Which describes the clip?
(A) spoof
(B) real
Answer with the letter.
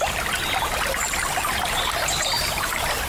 B